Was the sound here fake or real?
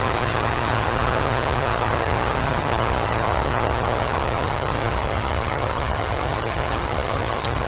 fake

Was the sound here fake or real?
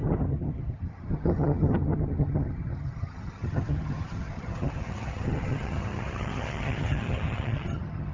fake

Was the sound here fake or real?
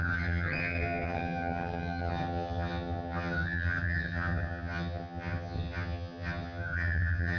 fake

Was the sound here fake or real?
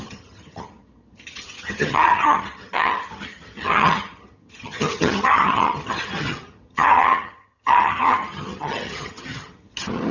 fake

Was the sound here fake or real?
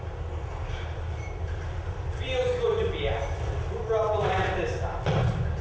real